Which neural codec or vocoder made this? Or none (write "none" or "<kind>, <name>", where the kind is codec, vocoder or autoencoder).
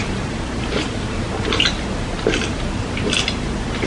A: vocoder, BigVGAN v2